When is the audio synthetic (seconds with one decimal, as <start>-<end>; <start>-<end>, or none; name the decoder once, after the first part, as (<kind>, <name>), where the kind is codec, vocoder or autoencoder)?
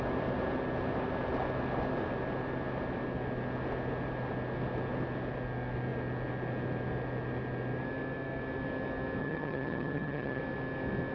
9.2-10.4 (vocoder, HiFi-GAN)